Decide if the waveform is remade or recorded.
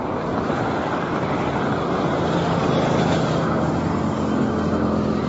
recorded